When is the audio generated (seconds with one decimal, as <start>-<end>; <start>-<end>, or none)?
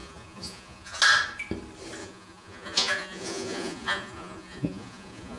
0.0-1.0; 2.0-5.4